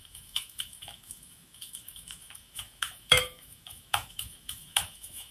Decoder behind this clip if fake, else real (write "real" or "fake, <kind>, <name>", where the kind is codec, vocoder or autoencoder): fake, autoencoder, DAC-VAE